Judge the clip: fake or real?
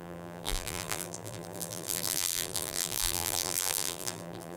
fake